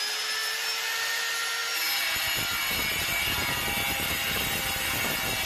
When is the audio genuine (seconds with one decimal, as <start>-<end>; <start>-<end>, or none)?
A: 0.0-0.4; 1.2-5.5